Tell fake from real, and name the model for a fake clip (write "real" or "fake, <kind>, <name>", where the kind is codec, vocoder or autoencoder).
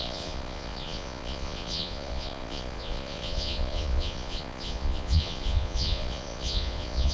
fake, vocoder, Vocos